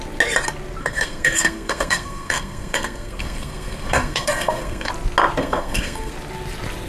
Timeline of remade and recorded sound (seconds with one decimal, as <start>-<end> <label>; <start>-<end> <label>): 0.0-0.8 recorded; 0.8-4.9 remade; 4.9-5.4 recorded; 5.4-6.1 remade; 6.1-6.9 recorded